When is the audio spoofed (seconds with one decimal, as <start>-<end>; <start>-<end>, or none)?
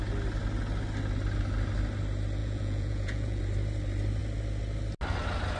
2.4-3.4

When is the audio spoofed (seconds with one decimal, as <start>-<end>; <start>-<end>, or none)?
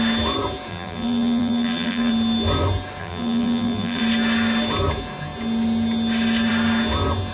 0.7-2.1; 3.0-4.0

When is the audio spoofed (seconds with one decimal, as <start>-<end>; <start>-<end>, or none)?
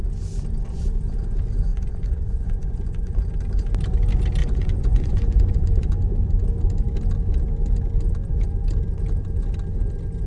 1.7-3.2; 4.4-5.9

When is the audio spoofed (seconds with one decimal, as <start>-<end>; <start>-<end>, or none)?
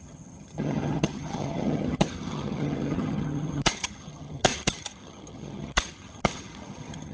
0.0-7.1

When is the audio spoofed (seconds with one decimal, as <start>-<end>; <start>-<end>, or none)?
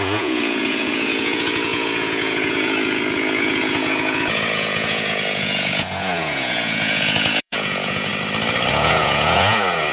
0.0-8.1; 8.7-9.9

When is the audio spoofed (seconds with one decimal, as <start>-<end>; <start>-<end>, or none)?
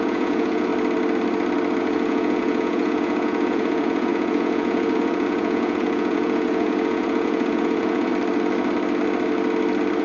0.0-0.7; 1.8-8.1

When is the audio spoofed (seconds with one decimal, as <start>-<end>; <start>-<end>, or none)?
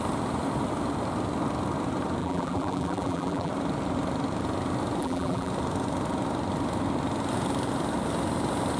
2.2-3.5; 5.0-5.5